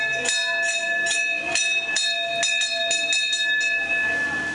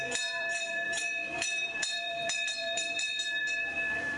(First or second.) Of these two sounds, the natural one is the first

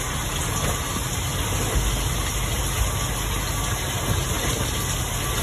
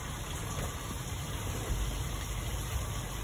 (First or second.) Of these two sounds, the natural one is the first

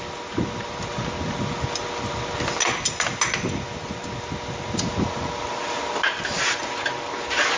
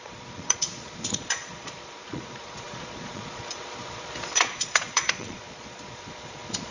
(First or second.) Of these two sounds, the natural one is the first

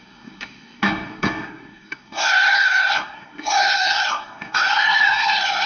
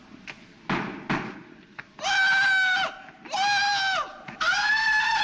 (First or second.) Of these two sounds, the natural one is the second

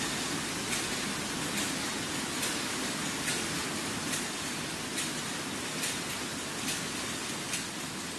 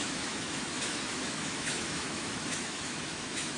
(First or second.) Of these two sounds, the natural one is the first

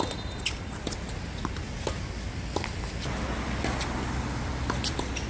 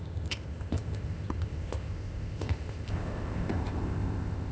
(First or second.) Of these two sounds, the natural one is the first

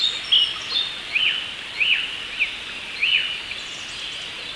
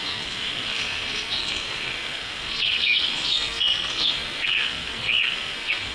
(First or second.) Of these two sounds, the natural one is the first